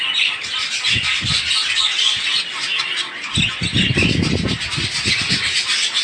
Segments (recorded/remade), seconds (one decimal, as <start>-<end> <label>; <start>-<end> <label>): 0.0-6.0 recorded